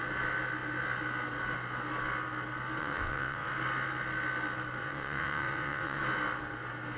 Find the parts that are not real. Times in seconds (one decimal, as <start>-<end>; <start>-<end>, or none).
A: 2.8-3.5; 4.8-6.0